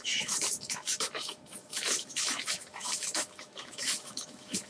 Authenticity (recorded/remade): remade